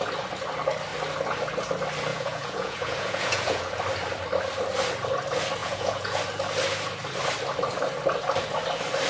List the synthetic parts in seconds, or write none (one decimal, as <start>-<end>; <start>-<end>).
2.1-3.8; 5.6-6.2